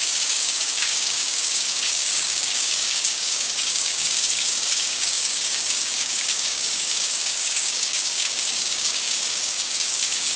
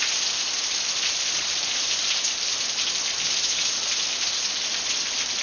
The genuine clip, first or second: second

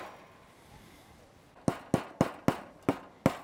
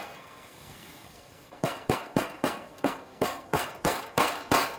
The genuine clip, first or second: first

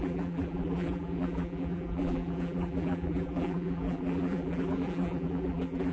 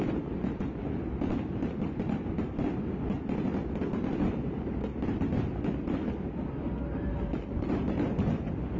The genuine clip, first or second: second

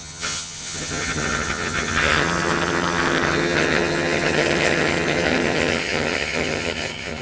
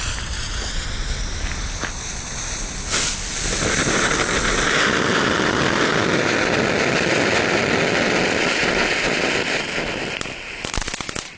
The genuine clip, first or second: second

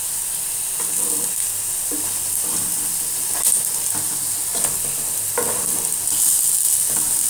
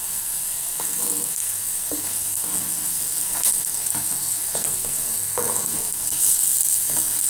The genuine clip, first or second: first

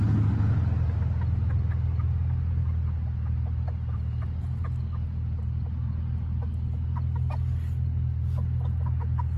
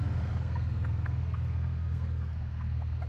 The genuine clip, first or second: first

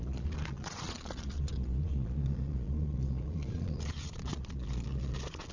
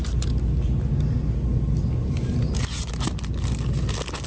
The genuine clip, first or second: second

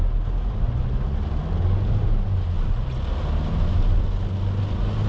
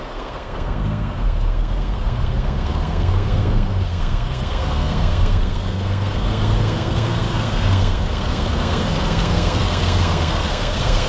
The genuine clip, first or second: first